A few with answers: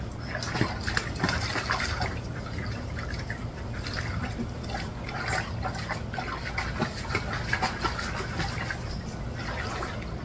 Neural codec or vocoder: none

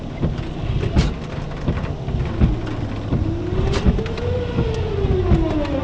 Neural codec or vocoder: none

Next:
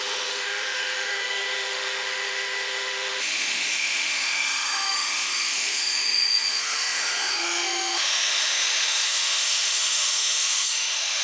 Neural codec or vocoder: autoencoder, DAC-VAE